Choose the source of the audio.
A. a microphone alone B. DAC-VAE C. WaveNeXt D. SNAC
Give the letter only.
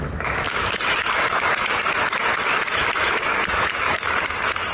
B